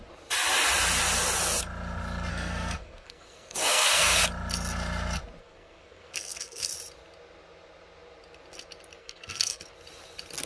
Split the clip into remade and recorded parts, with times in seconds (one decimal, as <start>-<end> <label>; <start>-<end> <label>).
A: 0.0-2.3 recorded; 2.3-4.2 remade; 4.2-5.4 recorded; 5.4-6.7 remade; 6.7-9.0 recorded; 9.0-9.6 remade; 9.6-10.5 recorded